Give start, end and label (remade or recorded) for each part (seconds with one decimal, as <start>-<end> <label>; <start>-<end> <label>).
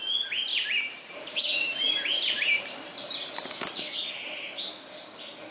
0.0-0.5 recorded; 0.5-3.0 remade; 3.0-5.5 recorded